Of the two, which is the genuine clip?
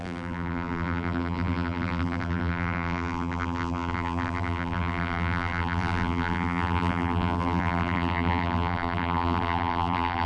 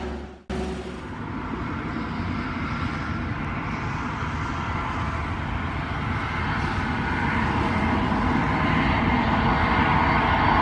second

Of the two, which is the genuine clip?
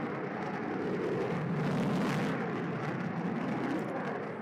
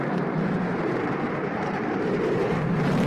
first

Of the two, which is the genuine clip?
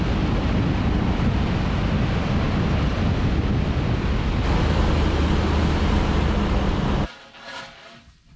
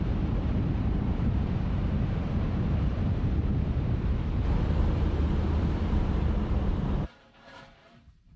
first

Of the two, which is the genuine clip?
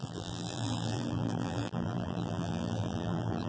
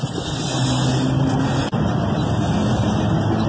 second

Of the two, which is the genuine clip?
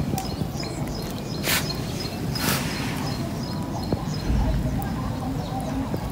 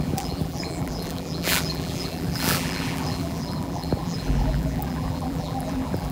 first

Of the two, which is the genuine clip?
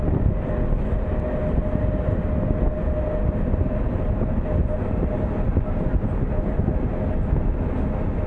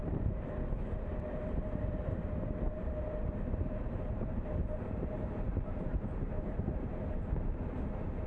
first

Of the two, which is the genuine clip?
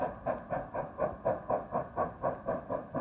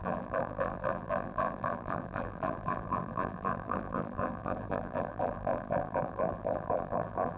first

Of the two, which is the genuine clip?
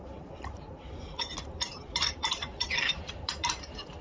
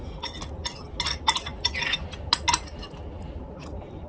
second